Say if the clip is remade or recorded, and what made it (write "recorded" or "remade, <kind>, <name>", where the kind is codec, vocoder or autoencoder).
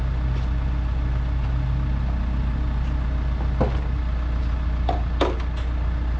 recorded